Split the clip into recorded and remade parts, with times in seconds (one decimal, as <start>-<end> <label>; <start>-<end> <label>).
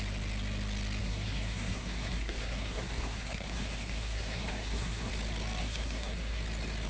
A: 0.0-1.0 recorded; 1.0-5.1 remade; 5.1-5.6 recorded; 5.6-6.4 remade; 6.4-6.9 recorded